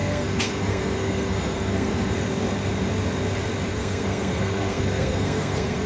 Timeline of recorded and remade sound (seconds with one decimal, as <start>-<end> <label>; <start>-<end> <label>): 0.0-2.3 remade; 2.3-3.7 recorded; 3.7-5.9 remade